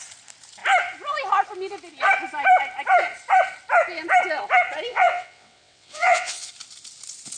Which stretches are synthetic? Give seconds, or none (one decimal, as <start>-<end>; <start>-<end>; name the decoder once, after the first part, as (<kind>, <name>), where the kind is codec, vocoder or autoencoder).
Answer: 4.9-6.5 (vocoder, WaveNeXt)